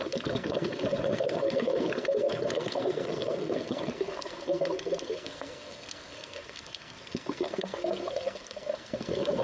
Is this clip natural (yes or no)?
no